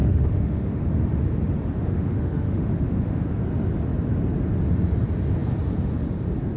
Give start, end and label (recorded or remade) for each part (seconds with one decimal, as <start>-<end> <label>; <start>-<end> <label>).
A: 0.0-0.9 remade; 0.9-1.8 recorded; 1.8-3.2 remade; 3.2-6.6 recorded